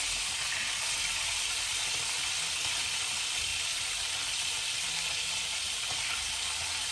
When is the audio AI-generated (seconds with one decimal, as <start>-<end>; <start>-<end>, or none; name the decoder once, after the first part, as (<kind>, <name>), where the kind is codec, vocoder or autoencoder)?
none